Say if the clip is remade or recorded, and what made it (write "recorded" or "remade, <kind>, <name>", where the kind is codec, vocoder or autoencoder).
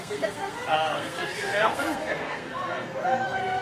remade, codec, SNAC